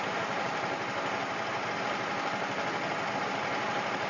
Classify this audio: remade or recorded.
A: recorded